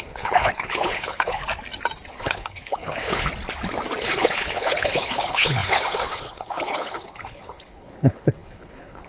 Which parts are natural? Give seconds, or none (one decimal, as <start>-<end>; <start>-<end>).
1.4-2.1; 3.3-4.0

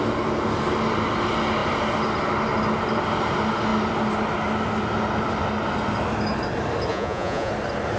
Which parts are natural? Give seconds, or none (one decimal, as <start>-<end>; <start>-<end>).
0.0-6.9; 7.5-8.0

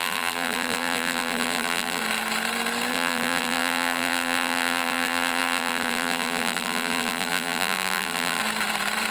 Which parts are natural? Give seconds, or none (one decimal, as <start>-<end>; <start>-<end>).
2.0-2.9; 8.4-9.1

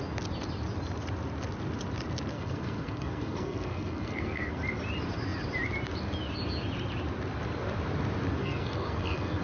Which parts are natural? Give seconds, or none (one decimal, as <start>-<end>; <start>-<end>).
0.0-2.3; 4.6-8.4

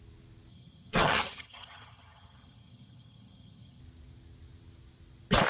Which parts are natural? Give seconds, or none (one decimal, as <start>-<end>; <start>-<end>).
0.0-0.5; 3.8-5.5

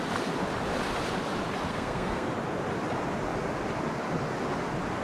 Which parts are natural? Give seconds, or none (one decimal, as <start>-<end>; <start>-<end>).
0.0-1.7; 2.3-5.0

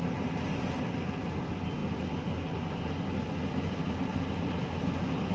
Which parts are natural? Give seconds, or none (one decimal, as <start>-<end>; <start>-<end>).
0.0-5.3